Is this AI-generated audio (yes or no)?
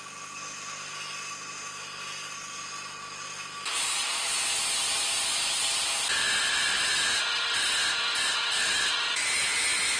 no